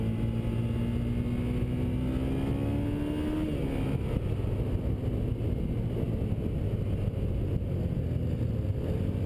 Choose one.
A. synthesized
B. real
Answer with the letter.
B